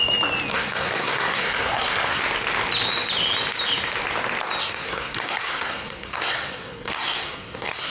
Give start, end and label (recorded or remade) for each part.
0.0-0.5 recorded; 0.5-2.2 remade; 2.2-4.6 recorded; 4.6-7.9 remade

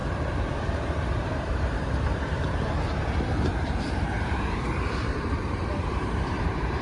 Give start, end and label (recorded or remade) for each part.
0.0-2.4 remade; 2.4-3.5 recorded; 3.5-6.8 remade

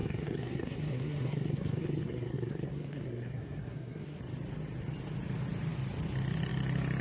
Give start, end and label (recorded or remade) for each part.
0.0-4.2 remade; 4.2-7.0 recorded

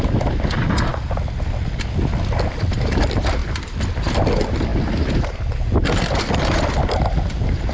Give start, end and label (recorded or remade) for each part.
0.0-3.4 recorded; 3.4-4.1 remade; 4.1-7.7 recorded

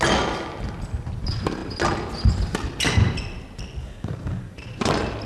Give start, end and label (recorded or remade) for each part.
0.0-3.8 recorded; 3.8-4.4 remade; 4.4-5.3 recorded

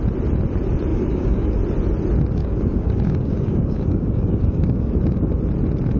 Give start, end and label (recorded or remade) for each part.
0.0-0.9 recorded; 0.9-1.6 remade; 1.6-2.4 recorded; 2.4-5.0 remade; 5.0-6.0 recorded

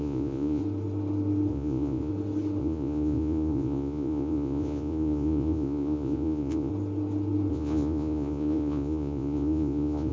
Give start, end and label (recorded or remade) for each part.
0.0-0.6 remade; 0.6-1.5 recorded; 1.5-2.1 remade; 2.1-2.6 recorded; 2.6-6.7 remade; 6.7-7.5 recorded; 7.5-10.1 remade